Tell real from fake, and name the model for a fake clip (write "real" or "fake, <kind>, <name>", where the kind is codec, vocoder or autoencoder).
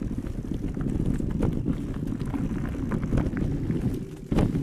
real